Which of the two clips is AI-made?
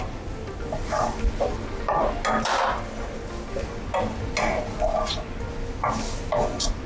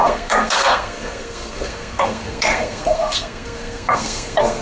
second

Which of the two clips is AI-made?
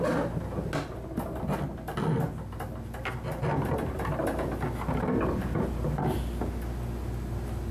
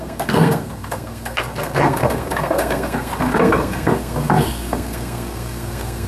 second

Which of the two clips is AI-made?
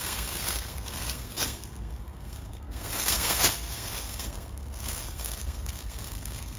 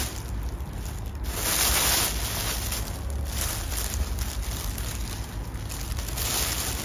first